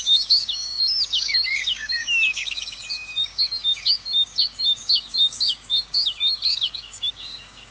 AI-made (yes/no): yes